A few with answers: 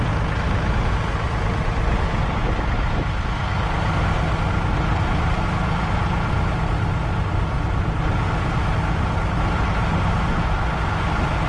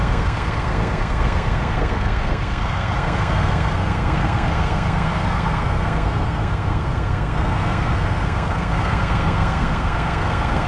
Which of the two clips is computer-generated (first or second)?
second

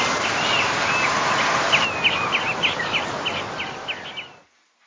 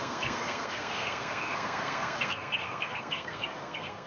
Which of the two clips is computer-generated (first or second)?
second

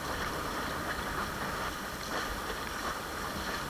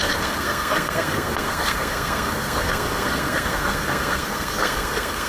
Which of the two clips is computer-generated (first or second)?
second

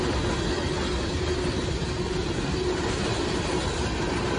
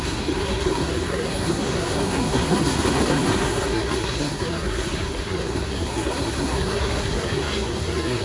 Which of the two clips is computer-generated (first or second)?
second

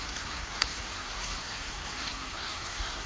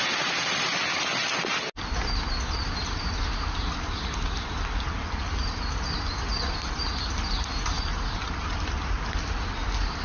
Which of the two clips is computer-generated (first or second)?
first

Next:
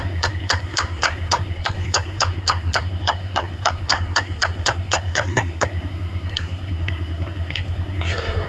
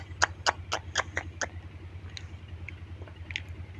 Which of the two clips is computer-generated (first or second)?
first